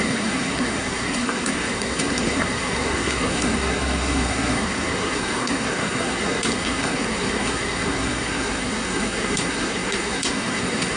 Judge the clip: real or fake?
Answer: fake